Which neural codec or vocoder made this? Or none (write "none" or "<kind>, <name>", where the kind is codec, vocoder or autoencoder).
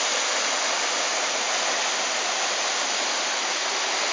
none